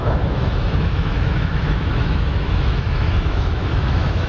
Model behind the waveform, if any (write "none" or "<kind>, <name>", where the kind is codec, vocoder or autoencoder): autoencoder, DAC-VAE